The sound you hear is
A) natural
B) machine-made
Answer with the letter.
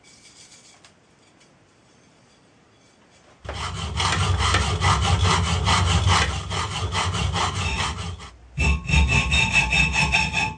A